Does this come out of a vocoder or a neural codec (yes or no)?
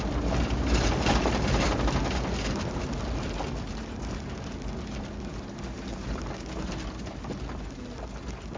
no